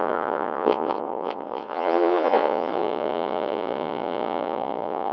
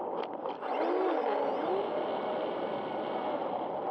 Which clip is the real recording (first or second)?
second